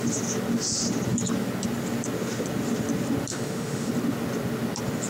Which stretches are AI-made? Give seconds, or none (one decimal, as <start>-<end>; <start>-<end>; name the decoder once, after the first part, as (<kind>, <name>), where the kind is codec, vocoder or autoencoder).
3.3-3.9 (autoencoder, DAC-VAE)